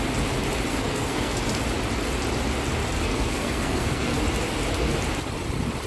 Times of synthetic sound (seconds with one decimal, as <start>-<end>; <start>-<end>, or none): 0.7-1.4; 2.8-4.2